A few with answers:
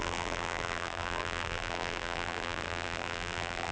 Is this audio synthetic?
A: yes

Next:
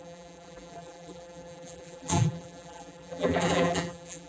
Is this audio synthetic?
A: yes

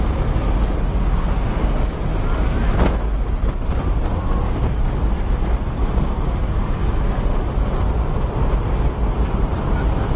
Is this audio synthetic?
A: no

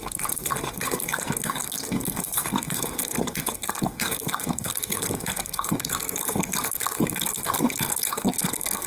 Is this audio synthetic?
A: yes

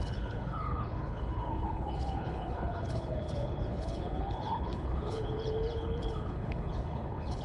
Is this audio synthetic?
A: yes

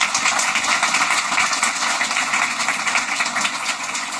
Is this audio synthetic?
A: yes